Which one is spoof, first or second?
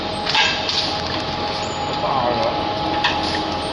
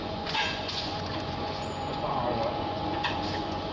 second